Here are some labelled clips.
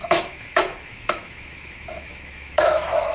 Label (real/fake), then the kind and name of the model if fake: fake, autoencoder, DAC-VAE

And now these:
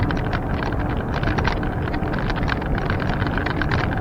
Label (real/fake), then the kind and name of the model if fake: real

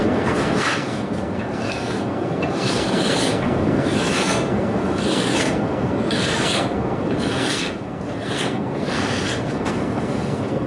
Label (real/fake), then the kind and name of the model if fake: fake, codec, SNAC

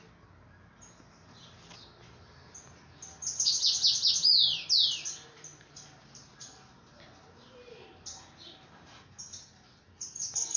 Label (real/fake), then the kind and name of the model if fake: real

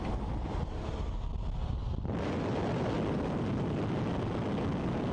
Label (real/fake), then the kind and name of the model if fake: real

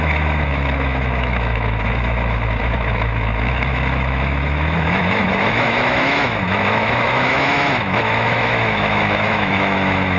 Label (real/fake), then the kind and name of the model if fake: fake, autoencoder, DAC-VAE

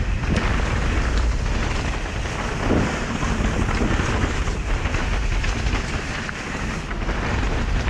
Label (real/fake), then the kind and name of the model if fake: real